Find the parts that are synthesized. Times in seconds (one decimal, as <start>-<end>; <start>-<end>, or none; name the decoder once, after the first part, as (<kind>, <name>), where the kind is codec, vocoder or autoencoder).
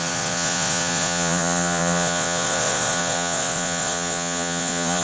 0.0-5.0 (vocoder, Vocos)